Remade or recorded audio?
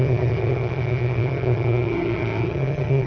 remade